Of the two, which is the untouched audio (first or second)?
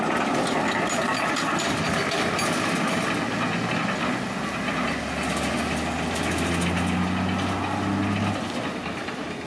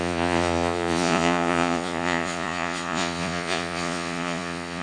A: first